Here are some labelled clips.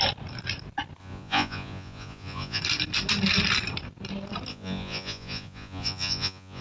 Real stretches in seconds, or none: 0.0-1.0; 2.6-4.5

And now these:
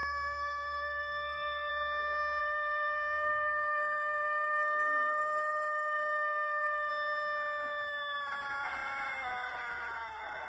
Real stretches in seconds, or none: 1.7-2.4; 6.9-10.5

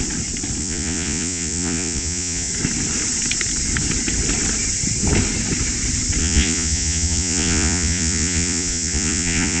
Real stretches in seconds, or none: 0.0-0.6; 2.5-6.2

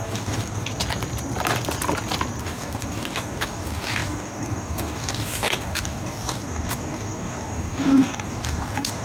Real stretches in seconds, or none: 0.7-2.4